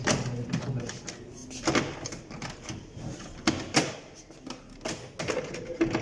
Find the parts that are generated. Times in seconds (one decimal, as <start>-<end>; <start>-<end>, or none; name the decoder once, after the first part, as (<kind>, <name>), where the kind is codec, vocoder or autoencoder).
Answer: none